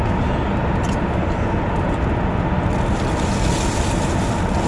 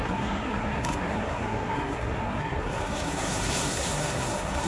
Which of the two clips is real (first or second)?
first